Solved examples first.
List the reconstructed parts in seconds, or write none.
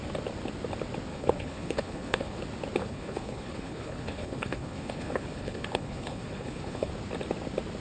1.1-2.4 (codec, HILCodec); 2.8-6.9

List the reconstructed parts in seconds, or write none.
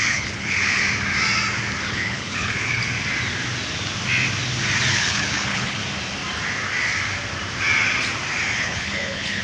0.0-0.8 (codec, HILCodec); 1.9-2.8; 4.9-5.8; 8.6-9.4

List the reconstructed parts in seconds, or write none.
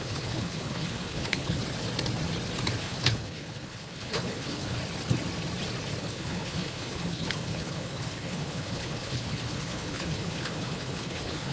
0.0-1.6 (codec, HILCodec); 2.8-4.8; 6.0-11.5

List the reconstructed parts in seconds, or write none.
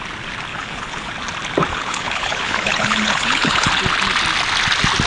0.5-1.1 (codec, HILCodec); 1.7-3.7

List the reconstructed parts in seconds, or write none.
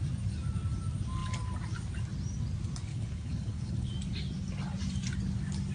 2.9-3.9 (codec, HILCodec)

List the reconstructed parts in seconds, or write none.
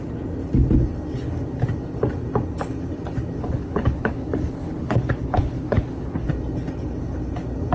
3.4-6.3 (codec, HILCodec)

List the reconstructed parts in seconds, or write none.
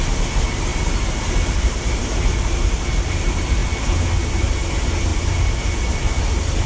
none